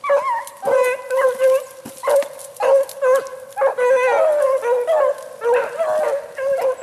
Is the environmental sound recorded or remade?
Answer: recorded